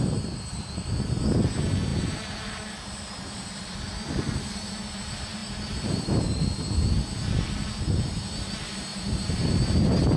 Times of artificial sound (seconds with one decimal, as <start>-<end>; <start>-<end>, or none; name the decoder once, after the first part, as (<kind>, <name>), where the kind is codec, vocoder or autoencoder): 8.9-9.4 (vocoder, BigVGAN v2)